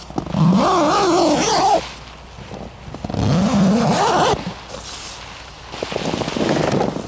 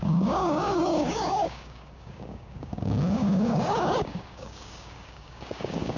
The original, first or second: first